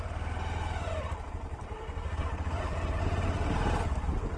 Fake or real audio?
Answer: real